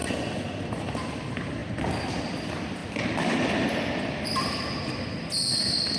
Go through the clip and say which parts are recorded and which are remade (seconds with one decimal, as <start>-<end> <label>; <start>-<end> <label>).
0.0-1.6 remade; 1.6-2.2 recorded; 2.2-2.8 remade; 2.8-4.0 recorded; 4.0-6.0 remade

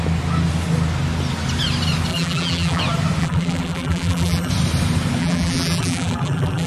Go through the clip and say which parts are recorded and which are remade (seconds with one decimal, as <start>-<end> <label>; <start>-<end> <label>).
0.0-2.1 recorded; 2.1-2.8 remade; 2.8-3.2 recorded; 3.2-4.5 remade; 4.5-5.2 recorded; 5.2-6.7 remade

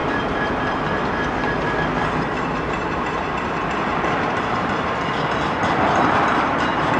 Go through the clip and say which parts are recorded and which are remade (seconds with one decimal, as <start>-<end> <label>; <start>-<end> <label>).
0.0-2.2 recorded; 2.2-7.0 remade

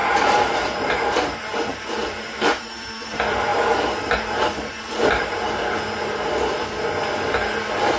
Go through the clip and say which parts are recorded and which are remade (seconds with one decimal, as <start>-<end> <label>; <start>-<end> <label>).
0.0-2.9 remade; 2.9-3.5 recorded; 3.5-5.8 remade; 5.8-8.0 recorded

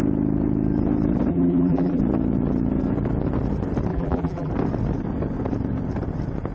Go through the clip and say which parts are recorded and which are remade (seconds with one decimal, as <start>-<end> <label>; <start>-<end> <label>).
0.0-1.3 recorded; 1.3-2.0 remade; 2.0-3.9 recorded; 3.9-4.5 remade; 4.5-6.5 recorded

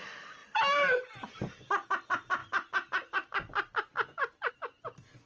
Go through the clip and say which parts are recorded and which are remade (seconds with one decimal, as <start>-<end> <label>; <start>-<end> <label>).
0.0-0.4 recorded; 0.4-1.5 remade; 1.5-2.4 recorded; 2.4-4.5 remade; 4.5-5.3 recorded

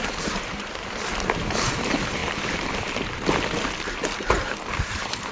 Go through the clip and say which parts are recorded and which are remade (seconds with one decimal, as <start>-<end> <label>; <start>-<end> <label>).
0.0-5.3 remade